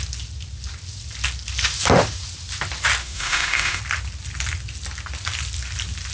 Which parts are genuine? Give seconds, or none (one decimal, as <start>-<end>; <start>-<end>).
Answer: 0.0-3.0; 3.8-6.1